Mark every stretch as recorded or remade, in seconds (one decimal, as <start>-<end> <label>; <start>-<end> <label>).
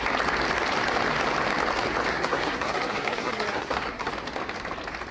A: 0.0-2.1 recorded; 2.1-4.1 remade; 4.1-5.1 recorded